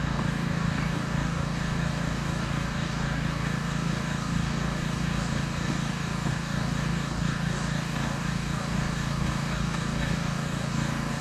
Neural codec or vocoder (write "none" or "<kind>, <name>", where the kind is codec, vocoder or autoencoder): codec, DAC